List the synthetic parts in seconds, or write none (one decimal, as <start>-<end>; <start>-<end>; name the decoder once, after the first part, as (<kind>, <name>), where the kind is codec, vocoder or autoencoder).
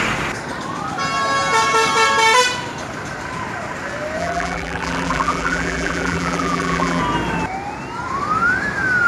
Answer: 4.2-7.0 (vocoder, BigVGAN v2)